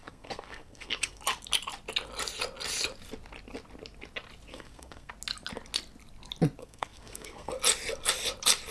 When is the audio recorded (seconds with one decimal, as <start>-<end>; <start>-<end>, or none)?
1.2-4.5; 5.1-6.6; 7.5-8.7